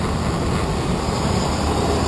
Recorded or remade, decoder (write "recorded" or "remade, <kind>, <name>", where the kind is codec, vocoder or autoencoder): recorded